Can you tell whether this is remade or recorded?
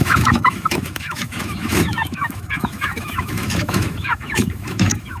remade